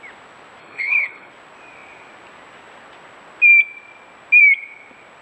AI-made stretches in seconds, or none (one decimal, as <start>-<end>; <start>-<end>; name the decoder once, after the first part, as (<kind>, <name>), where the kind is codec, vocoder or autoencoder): 0.6-1.3 (codec, HILCodec)